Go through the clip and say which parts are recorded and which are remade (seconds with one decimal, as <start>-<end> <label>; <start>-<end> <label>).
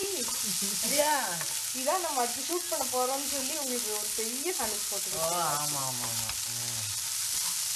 0.0-7.8 recorded